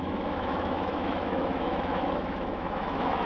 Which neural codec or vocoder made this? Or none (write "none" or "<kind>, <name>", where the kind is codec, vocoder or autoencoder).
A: autoencoder, DAC-VAE